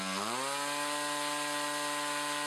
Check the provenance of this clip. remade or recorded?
recorded